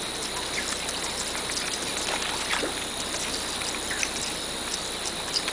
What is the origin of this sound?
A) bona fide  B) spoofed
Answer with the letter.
A